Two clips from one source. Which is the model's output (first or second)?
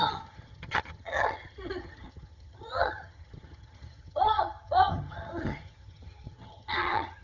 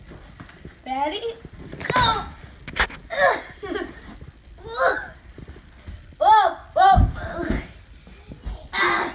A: first